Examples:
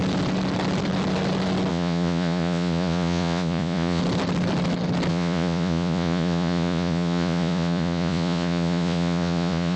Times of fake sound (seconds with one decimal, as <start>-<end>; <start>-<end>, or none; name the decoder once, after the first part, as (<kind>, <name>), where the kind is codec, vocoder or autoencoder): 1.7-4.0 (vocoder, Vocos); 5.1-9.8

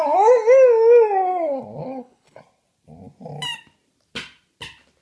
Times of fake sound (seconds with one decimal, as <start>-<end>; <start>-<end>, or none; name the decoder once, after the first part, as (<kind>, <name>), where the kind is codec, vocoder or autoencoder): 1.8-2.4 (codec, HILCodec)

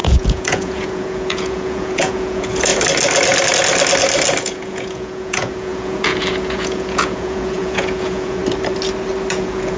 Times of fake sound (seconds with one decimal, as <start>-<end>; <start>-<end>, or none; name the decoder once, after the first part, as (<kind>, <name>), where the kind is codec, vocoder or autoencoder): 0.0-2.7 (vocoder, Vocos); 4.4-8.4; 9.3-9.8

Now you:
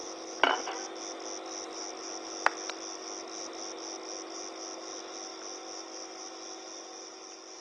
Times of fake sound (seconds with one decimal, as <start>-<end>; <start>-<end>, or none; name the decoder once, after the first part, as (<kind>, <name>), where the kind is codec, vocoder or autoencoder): none